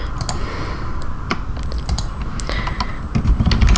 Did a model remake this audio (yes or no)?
no